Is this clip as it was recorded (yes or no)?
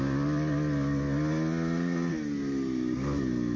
yes